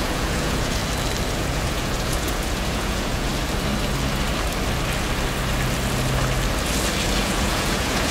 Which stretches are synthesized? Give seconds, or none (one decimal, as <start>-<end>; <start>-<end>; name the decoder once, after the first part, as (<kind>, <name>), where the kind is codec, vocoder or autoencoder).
0.0-0.8 (vocoder, Vocos); 1.3-3.3; 7.2-8.1